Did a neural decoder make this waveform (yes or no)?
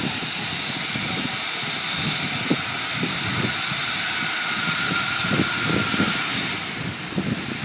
no